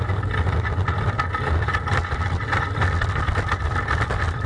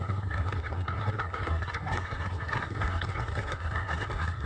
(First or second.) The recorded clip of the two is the first